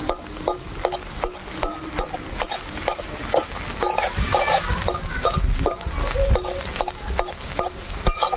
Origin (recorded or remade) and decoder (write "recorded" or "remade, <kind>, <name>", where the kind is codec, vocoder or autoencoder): recorded